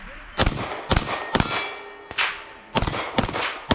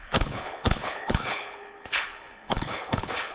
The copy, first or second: second